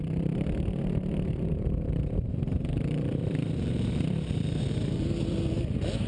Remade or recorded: remade